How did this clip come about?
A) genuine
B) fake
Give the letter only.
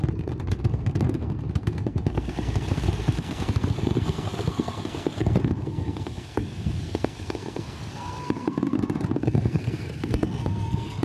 B